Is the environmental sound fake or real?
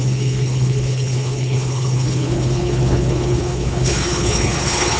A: fake